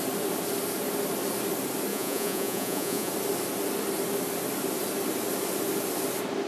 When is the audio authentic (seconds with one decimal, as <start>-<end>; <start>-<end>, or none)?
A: 0.0-1.9; 3.1-6.5